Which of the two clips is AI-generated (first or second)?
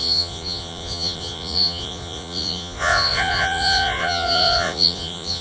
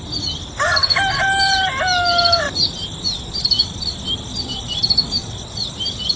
first